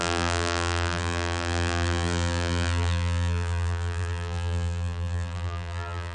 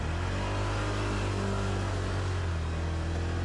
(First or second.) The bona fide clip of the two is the second